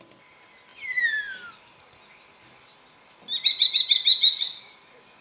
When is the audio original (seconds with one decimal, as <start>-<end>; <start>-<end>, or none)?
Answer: 0.0-5.2

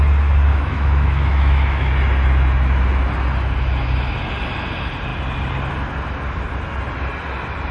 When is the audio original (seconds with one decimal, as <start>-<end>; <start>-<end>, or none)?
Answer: 0.0-0.5; 1.9-7.7

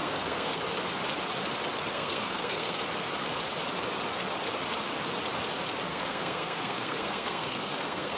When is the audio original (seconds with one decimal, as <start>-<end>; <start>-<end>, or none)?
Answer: 0.6-1.9; 2.8-5.9

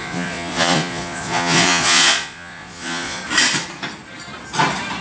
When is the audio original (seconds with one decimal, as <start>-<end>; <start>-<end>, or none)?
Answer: 3.2-5.0